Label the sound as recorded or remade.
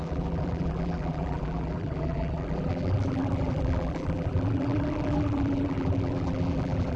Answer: remade